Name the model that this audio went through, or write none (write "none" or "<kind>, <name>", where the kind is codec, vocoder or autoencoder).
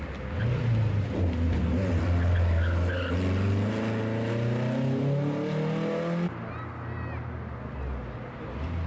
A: none